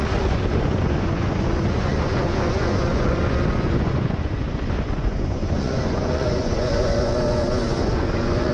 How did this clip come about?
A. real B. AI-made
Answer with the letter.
B